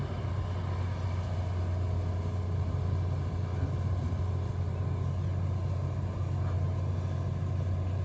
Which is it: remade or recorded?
recorded